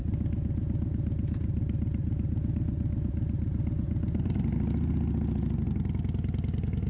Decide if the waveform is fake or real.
real